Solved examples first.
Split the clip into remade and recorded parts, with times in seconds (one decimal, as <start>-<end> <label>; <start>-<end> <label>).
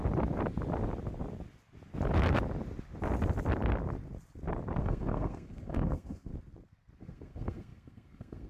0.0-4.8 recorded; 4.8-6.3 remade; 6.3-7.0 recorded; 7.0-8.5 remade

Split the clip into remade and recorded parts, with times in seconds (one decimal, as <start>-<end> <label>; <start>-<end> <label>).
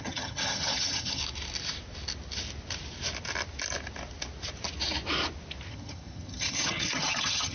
0.0-1.2 remade; 1.2-5.7 recorded; 5.7-7.5 remade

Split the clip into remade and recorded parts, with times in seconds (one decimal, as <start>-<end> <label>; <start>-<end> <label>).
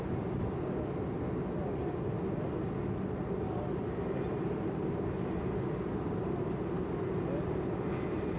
0.0-3.8 recorded; 3.8-6.9 remade; 6.9-8.4 recorded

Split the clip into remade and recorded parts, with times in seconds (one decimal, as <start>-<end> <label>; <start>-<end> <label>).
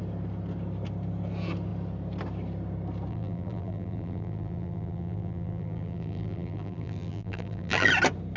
0.0-3.1 recorded; 3.1-7.9 remade; 7.9-8.4 recorded